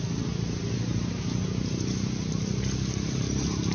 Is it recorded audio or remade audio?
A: recorded